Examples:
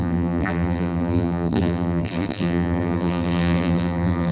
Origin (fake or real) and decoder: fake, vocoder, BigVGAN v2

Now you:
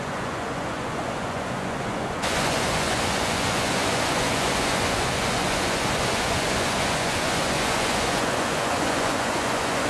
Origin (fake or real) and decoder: fake, vocoder, Vocos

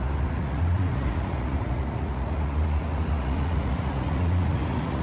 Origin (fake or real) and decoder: fake, vocoder, Vocos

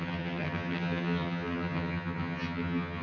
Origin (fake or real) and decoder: fake, vocoder, HiFi-GAN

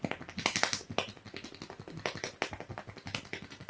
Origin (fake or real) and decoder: real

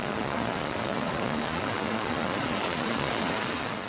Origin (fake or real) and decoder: fake, vocoder, Vocos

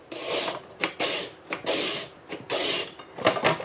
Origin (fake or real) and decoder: real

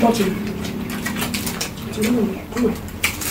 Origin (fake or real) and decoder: fake, vocoder, BigVGAN v2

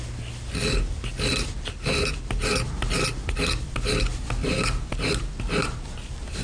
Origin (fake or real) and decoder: real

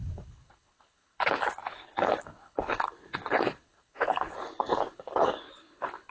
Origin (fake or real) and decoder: fake, codec, HILCodec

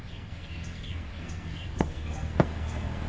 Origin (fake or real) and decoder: fake, codec, SNAC